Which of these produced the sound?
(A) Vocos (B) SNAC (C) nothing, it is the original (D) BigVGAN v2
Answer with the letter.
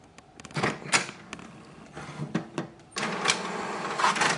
C